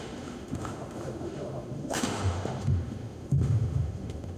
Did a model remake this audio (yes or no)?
yes